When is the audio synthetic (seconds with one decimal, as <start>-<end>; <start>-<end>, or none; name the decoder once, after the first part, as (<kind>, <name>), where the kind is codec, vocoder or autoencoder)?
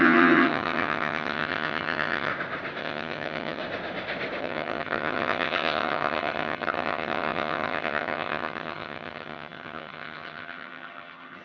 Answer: 0.0-2.3 (vocoder, HiFi-GAN); 2.8-3.6; 4.4-11.4